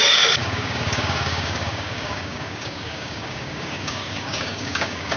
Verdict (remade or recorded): remade